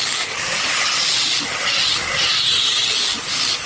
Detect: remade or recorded recorded